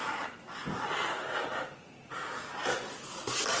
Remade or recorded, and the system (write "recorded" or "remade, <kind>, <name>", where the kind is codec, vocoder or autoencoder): recorded